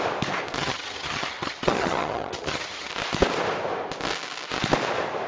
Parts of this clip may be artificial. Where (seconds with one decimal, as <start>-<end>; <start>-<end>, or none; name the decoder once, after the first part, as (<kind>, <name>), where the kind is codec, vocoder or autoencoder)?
0.6-2.9 (vocoder, HiFi-GAN)